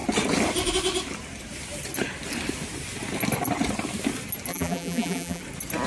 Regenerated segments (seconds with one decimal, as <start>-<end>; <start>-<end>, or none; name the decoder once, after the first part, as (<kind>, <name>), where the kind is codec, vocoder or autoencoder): 4.5-5.4 (vocoder, BigVGAN v2)